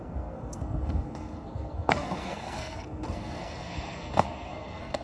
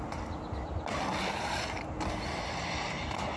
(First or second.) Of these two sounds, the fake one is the first